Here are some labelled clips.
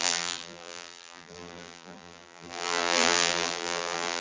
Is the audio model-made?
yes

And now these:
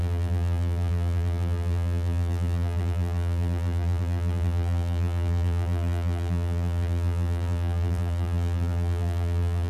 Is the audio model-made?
yes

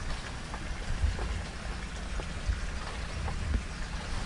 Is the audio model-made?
no